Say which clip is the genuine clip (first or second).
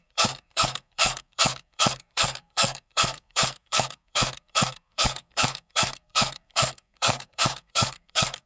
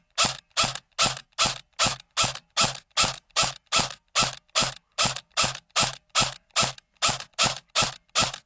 second